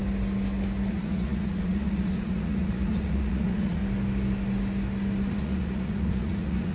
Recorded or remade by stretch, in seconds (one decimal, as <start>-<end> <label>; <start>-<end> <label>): 0.0-0.9 recorded; 0.9-3.8 remade; 3.8-5.3 recorded; 5.3-6.7 remade